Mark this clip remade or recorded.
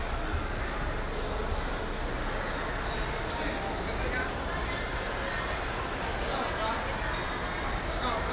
recorded